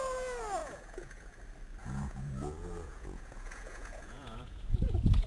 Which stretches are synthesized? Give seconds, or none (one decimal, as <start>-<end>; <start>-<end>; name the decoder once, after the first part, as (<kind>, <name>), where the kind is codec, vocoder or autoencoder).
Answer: 0.6-1.4 (vocoder, Vocos); 1.8-5.3